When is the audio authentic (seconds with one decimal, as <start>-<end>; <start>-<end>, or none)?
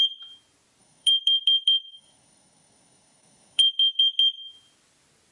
0.0-0.8; 4.0-5.3